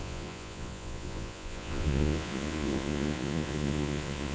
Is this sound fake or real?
fake